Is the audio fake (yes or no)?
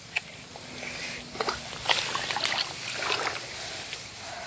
no